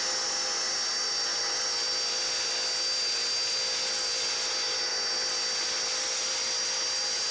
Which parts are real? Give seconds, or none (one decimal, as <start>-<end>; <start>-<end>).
0.0-7.3